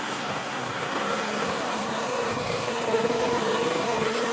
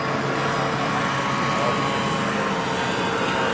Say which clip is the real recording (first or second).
second